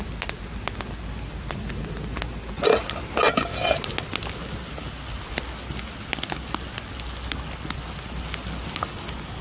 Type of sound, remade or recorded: recorded